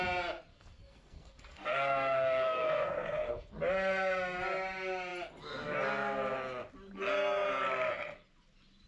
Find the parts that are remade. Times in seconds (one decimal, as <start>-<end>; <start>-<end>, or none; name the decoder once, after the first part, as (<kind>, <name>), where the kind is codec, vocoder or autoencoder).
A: 0.5-3.5 (codec, SNAC)